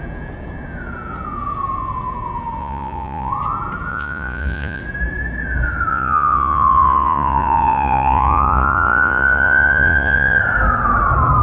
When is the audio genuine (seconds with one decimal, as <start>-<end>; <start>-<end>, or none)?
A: 0.0-2.6; 3.3-3.9; 4.8-5.9; 10.4-11.4